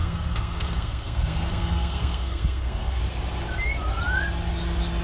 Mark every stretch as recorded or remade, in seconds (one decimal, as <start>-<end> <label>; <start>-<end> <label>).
0.0-3.0 remade; 3.0-5.0 recorded